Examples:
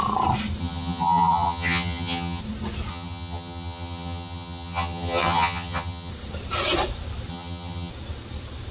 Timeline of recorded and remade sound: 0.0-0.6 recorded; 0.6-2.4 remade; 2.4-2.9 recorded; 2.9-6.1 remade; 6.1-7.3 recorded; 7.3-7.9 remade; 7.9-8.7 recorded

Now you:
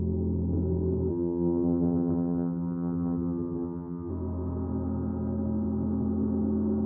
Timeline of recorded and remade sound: 0.0-1.1 recorded; 1.1-4.1 remade; 4.1-6.9 recorded